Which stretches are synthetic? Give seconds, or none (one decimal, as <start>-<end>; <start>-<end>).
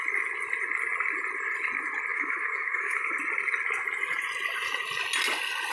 2.1-3.1